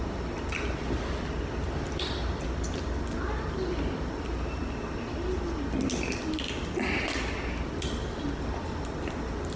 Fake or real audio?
real